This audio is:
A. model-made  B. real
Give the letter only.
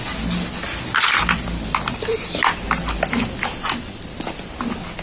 B